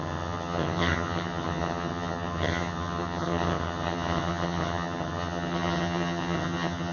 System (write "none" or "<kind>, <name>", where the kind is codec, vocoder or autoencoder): vocoder, HiFi-GAN